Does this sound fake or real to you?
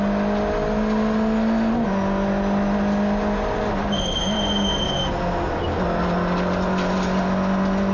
real